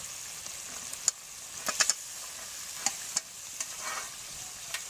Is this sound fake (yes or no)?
no